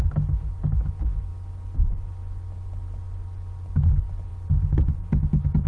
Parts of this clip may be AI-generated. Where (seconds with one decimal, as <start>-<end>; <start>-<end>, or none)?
none